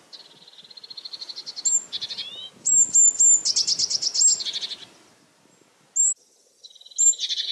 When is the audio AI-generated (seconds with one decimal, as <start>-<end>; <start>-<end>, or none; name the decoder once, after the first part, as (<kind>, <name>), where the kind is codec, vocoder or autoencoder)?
none